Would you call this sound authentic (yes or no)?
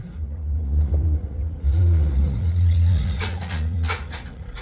no